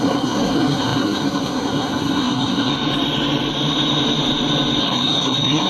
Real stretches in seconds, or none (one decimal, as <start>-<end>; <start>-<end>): 2.7-4.8